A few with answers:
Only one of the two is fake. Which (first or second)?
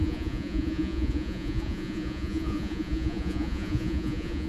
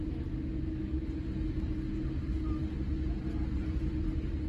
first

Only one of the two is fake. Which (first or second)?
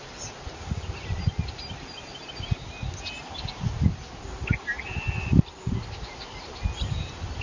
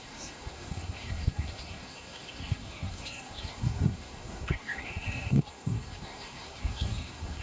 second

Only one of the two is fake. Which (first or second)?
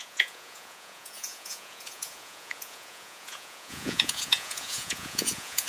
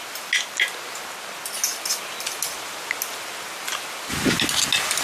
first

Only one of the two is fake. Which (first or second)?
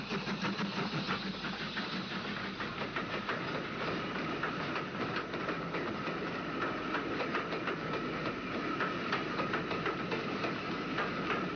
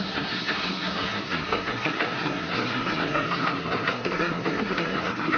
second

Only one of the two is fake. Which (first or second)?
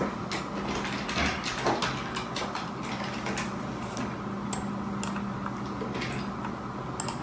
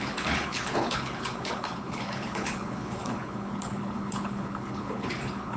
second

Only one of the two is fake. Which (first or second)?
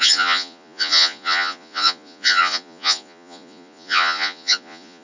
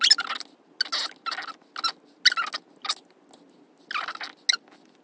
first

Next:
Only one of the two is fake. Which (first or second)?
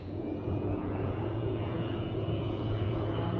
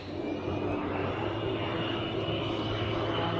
first